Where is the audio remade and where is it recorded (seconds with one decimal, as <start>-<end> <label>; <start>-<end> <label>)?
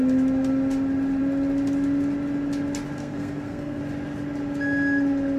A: 0.0-3.0 recorded; 3.0-3.8 remade; 3.8-5.4 recorded